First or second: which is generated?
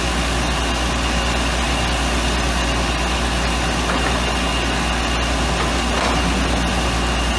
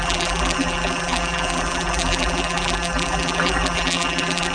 second